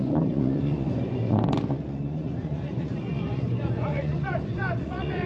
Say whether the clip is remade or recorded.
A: remade